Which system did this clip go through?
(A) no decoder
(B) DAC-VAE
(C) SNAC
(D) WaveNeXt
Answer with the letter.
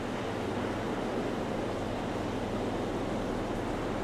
A